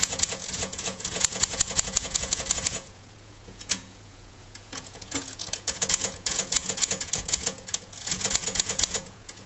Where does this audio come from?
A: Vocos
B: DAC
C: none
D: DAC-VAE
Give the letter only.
A